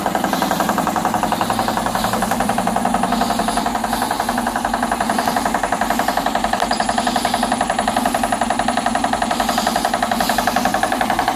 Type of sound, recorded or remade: remade